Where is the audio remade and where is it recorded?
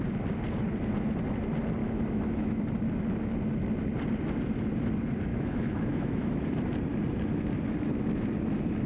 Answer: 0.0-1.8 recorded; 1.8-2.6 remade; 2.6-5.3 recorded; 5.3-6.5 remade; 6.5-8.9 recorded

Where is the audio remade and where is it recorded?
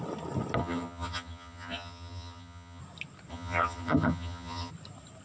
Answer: 0.0-0.6 recorded; 0.6-2.8 remade; 2.8-3.3 recorded; 3.3-4.7 remade; 4.7-5.2 recorded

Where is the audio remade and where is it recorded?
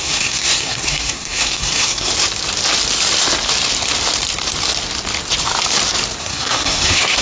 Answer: 0.0-2.1 remade; 2.1-6.2 recorded; 6.2-7.2 remade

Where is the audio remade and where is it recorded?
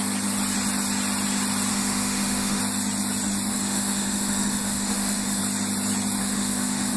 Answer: 0.0-1.7 recorded; 1.7-2.6 remade; 2.6-3.5 recorded; 3.5-5.4 remade; 5.4-6.2 recorded; 6.2-7.0 remade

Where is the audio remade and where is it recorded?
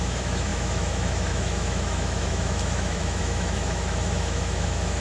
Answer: 0.0-5.0 remade